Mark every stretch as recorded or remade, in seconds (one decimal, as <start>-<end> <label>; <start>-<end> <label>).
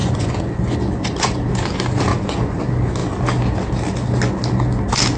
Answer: 0.0-1.5 remade; 1.5-2.1 recorded; 2.1-2.6 remade; 2.6-5.2 recorded